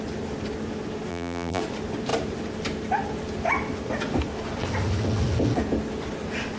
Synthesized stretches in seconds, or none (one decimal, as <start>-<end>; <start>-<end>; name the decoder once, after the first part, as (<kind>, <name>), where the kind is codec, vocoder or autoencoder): 1.1-1.6 (vocoder, BigVGAN v2)

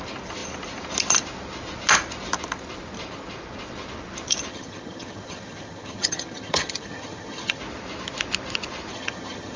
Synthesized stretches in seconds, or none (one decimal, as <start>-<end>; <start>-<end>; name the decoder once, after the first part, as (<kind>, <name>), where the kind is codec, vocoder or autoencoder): 4.5-7.6 (vocoder, HiFi-GAN); 8.9-9.6

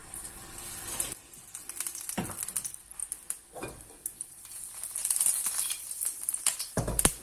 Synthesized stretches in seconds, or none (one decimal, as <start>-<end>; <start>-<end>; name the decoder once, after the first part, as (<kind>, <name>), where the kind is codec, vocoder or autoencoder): none

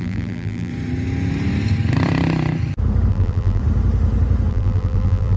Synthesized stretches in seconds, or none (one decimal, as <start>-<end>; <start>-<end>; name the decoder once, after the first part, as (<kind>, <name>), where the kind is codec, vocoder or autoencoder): 0.0-0.7 (vocoder, BigVGAN v2); 3.1-3.6; 4.5-5.4

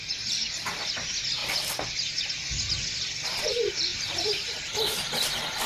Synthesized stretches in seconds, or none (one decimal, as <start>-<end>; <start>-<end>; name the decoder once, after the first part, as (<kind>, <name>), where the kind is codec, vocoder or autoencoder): 3.9-4.7 (vocoder, BigVGAN v2)

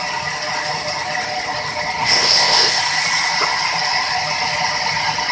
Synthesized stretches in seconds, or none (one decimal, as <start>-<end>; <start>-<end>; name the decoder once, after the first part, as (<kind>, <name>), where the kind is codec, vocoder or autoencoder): 2.0-2.8 (codec, ZipCodec)

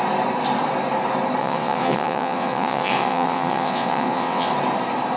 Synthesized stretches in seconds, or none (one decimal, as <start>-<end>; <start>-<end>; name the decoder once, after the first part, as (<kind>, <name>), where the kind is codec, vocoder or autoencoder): 1.4-4.5 (vocoder, WaveNeXt)

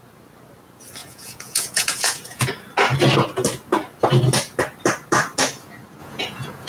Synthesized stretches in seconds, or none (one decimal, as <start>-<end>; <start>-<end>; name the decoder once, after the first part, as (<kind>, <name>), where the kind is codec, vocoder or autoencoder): 1.0-2.5 (vocoder, Vocos); 6.0-6.7